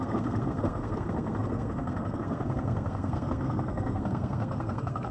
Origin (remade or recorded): remade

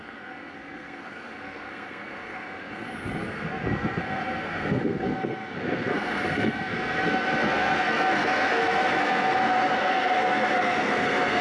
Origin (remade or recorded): remade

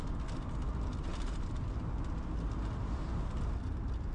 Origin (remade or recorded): recorded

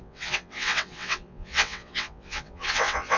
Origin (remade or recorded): remade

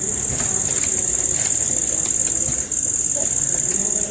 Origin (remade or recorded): recorded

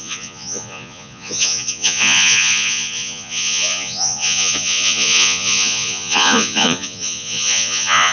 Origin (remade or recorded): remade